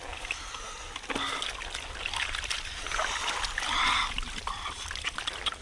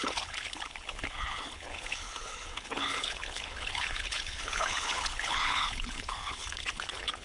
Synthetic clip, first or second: second